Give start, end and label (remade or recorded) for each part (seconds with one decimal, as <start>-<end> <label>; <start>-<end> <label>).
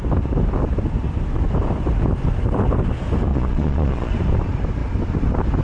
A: 0.0-3.3 recorded; 3.3-4.1 remade; 4.1-5.6 recorded